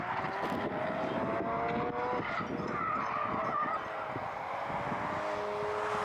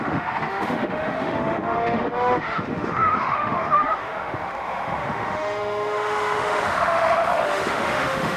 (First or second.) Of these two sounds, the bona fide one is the first